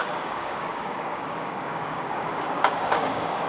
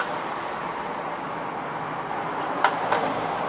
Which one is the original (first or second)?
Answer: second